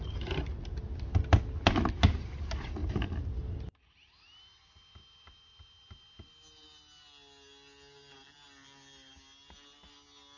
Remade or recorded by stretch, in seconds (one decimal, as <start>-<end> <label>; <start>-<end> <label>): 0.0-10.4 recorded